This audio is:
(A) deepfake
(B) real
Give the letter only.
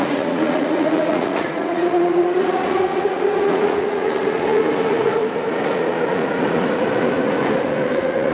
A